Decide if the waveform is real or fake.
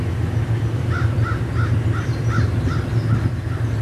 real